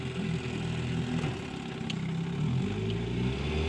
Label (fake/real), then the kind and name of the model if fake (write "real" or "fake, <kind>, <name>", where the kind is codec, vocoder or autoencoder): real